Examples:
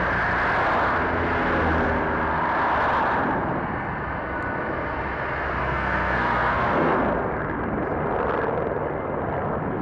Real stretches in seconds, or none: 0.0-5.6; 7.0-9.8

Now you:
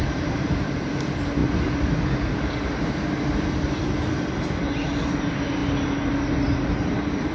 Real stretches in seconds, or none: 0.0-7.3

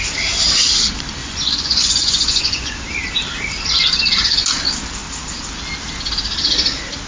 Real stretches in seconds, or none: 0.0-1.2; 2.7-7.1

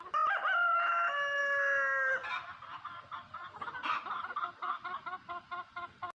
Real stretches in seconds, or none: 0.0-6.2

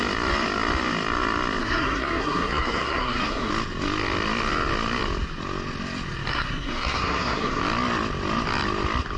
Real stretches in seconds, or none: 0.0-1.6; 3.5-6.3; 7.6-9.2